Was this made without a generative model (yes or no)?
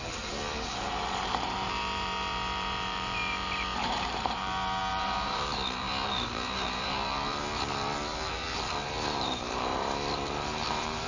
no